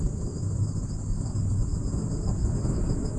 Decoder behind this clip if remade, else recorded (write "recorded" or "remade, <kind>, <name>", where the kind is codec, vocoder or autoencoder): recorded